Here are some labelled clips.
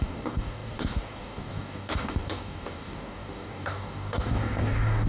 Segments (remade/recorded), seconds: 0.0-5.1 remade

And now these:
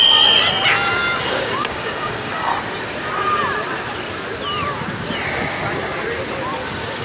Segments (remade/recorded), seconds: 0.0-1.2 recorded; 1.2-2.5 remade; 2.5-7.0 recorded

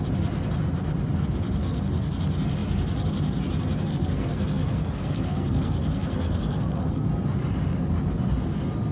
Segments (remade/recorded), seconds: 0.0-1.6 recorded; 1.6-2.1 remade; 2.1-3.9 recorded; 3.9-7.1 remade; 7.1-8.9 recorded

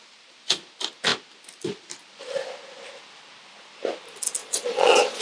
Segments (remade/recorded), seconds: 0.0-4.4 recorded; 4.4-5.2 remade

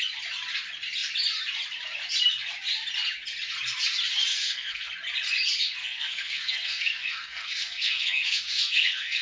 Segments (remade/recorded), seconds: 0.0-4.3 recorded; 4.3-4.9 remade; 4.9-5.8 recorded; 5.8-9.2 remade